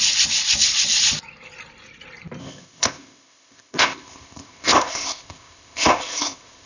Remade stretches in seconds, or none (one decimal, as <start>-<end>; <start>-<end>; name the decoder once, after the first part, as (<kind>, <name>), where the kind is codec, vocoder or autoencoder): 2.4-6.7 (codec, ZipCodec)